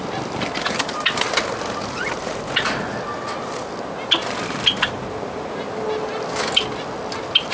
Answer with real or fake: real